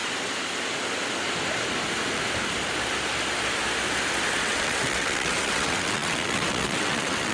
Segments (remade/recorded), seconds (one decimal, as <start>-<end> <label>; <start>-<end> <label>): 0.0-4.4 recorded; 4.4-7.3 remade